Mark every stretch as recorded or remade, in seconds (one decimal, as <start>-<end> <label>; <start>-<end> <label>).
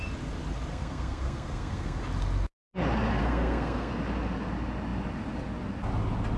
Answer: 0.0-0.7 recorded; 0.7-2.0 remade; 2.0-3.2 recorded; 3.2-3.9 remade; 3.9-6.4 recorded